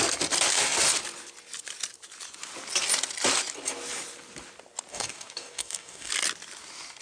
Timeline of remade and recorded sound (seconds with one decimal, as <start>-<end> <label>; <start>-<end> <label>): 0.0-4.9 recorded; 4.9-6.1 remade; 6.1-7.0 recorded